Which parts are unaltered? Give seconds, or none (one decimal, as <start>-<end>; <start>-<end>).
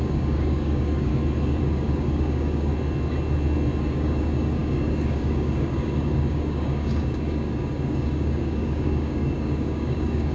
1.1-1.6; 2.7-3.8